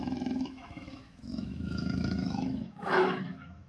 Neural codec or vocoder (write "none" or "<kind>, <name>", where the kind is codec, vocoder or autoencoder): autoencoder, DAC-VAE